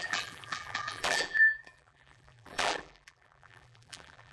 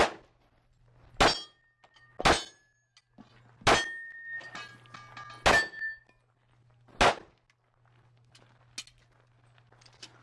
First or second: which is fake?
first